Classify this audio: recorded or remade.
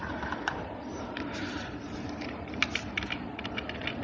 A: remade